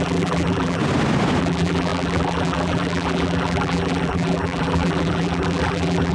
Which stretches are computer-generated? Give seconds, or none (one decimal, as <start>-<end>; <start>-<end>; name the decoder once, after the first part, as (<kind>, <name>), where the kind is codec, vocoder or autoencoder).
0.0-0.8 (vocoder, BigVGAN v2); 1.4-6.1